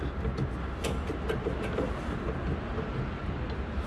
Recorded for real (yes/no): yes